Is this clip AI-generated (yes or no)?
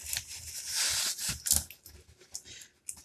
no